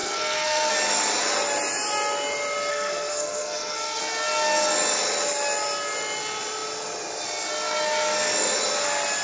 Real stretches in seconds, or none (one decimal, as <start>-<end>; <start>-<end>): 0.7-2.7; 4.0-9.2